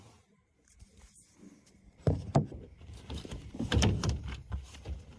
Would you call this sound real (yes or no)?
no